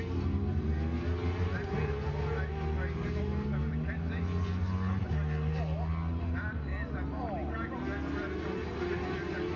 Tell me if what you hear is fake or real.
real